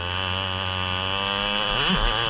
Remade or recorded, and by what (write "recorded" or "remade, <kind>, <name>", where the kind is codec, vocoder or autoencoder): recorded